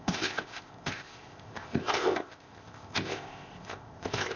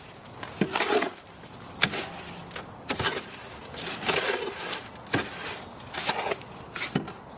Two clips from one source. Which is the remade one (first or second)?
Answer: first